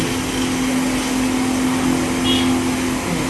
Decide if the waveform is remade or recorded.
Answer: recorded